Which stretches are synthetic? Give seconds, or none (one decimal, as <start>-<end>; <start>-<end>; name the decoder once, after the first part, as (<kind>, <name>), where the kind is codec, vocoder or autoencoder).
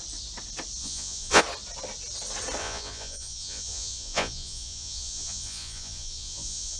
0.8-1.4 (vocoder, Vocos); 2.6-6.8